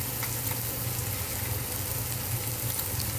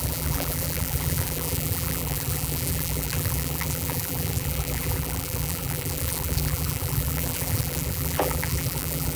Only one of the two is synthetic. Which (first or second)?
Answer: second